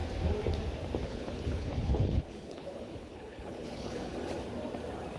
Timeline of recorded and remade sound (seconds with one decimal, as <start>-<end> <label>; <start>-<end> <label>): 0.0-1.0 recorded; 1.0-4.1 remade; 4.1-5.2 recorded